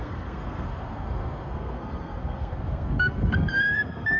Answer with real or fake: fake